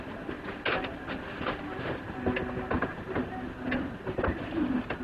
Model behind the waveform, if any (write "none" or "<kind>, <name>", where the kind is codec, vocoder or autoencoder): none